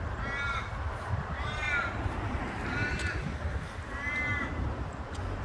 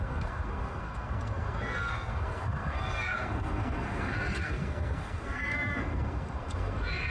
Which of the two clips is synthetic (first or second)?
second